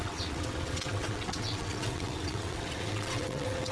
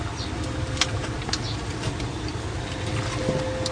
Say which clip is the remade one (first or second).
first